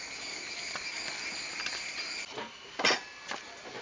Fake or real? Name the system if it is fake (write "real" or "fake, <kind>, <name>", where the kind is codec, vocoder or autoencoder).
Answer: real